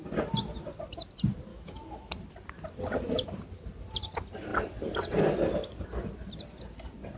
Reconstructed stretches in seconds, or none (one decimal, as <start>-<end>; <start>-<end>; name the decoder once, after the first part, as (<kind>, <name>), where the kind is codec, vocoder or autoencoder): 1.5-2.1 (autoencoder, DAC-VAE)